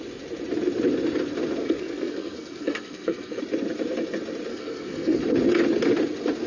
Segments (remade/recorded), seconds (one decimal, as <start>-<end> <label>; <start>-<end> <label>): 0.0-1.6 recorded; 1.6-3.4 remade; 3.4-4.5 recorded; 4.5-5.2 remade; 5.2-6.5 recorded